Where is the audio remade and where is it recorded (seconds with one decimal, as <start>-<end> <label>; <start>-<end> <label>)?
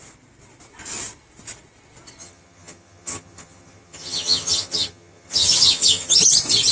0.0-2.2 recorded; 2.2-6.2 remade; 6.2-6.7 recorded